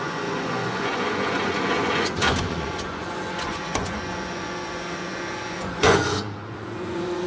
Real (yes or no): no